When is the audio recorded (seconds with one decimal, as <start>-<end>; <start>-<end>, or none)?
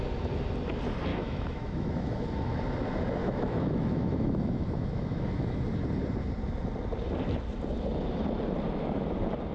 0.0-1.1; 2.6-3.2; 5.6-9.5